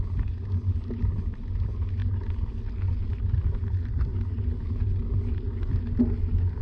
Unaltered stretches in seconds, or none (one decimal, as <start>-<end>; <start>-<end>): 0.0-6.6